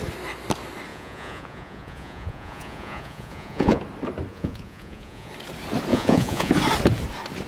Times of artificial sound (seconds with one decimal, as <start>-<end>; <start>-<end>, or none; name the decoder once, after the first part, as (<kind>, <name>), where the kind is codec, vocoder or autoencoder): 0.9-3.8 (vocoder, Vocos); 4.3-5.3; 5.9-6.5